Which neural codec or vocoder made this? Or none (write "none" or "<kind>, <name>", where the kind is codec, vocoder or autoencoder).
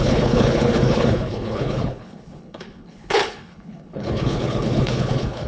codec, HILCodec